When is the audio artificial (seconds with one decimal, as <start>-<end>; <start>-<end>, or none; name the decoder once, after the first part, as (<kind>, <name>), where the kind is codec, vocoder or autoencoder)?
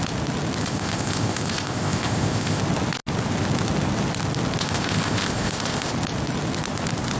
0.6-2.6 (codec, ZipCodec); 4.6-5.9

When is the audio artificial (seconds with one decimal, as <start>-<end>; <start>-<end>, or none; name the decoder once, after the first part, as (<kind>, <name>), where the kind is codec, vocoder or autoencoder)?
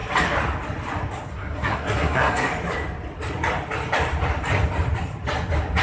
1.3-2.5 (codec, SNAC)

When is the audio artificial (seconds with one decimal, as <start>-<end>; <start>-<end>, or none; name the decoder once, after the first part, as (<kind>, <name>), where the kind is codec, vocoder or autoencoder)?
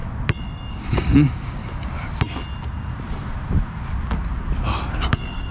0.7-1.6 (codec, DAC); 4.9-5.5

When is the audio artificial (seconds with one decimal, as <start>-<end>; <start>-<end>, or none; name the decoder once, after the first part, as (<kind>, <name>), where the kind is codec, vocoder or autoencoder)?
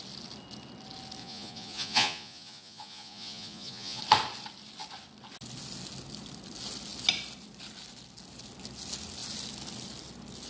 1.2-4.0 (vocoder, Vocos)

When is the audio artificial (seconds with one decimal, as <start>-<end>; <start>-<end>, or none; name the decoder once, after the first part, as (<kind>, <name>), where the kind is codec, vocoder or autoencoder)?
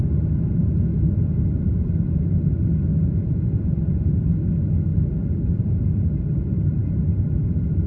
2.9-3.9 (vocoder, Vocos)